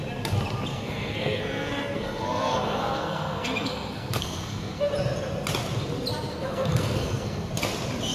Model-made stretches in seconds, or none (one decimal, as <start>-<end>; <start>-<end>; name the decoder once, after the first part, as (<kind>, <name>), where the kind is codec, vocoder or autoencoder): 0.7-4.9 (codec, SNAC); 6.3-7.5